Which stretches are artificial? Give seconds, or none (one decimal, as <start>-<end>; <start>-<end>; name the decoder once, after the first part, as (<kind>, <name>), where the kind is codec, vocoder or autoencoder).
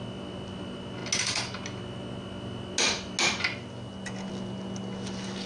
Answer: none